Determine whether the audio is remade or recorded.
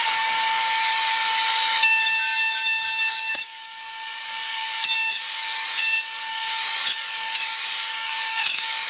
remade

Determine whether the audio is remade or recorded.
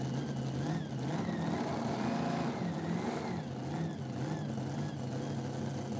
recorded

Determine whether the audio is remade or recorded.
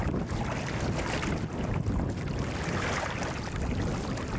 recorded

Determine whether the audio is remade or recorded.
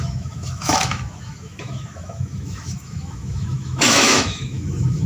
remade